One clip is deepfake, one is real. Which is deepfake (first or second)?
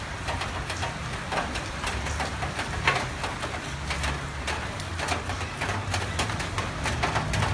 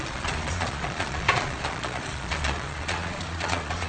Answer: second